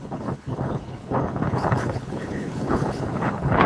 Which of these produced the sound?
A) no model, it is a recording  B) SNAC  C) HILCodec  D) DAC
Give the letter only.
C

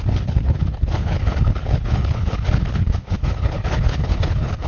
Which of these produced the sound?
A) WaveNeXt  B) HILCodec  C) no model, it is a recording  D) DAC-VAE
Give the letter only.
B